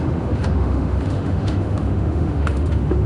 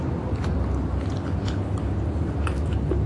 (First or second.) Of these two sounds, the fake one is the first